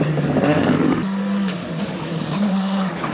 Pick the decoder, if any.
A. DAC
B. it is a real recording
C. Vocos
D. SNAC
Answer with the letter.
A